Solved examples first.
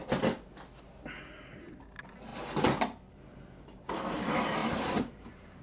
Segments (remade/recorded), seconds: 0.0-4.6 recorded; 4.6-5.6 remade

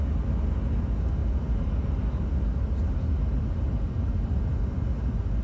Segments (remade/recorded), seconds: 0.0-1.2 recorded; 1.2-4.4 remade; 4.4-5.4 recorded

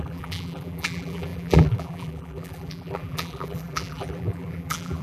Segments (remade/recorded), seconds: 0.0-5.0 remade

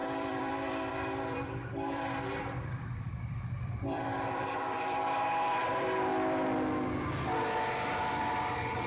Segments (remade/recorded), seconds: 0.0-6.1 remade; 6.1-8.9 recorded

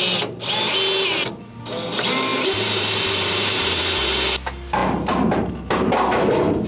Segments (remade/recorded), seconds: 0.0-2.3 recorded; 2.3-3.8 remade; 3.8-6.7 recorded

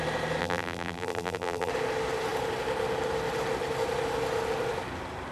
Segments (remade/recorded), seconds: 0.0-0.4 recorded; 0.4-1.7 remade; 1.7-5.3 recorded

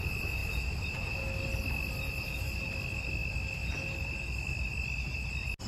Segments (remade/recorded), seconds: 0.0-5.7 recorded